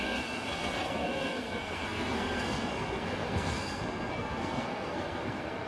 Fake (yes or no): yes